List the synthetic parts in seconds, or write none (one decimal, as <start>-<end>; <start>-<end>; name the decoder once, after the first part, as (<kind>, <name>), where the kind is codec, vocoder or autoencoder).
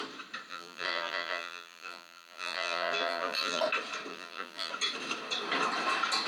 0.5-3.6 (vocoder, BigVGAN v2); 4.1-4.7